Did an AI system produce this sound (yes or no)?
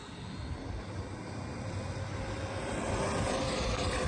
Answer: no